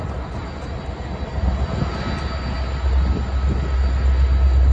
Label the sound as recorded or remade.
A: recorded